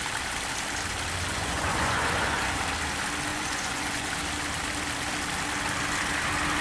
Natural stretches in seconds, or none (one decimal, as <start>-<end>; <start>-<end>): 0.0-1.3; 2.6-3.3; 4.1-6.6